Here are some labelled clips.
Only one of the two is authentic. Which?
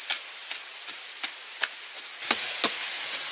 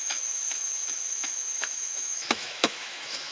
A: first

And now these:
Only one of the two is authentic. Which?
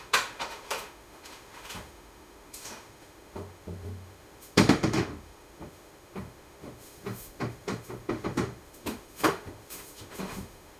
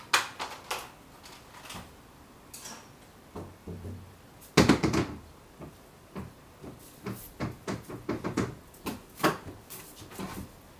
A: second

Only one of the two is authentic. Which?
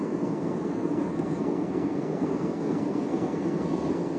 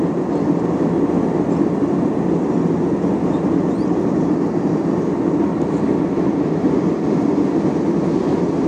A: second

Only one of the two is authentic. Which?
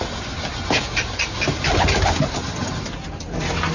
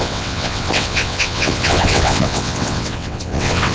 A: first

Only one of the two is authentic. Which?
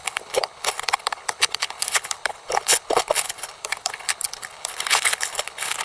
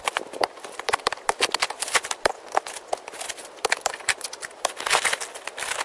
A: second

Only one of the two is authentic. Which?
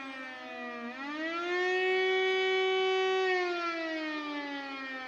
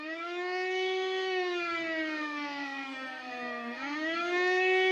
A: first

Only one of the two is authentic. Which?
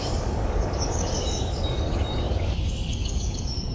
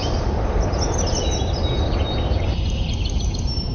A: second